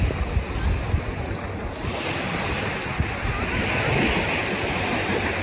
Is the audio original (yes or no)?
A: yes